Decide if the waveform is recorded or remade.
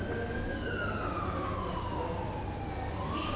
recorded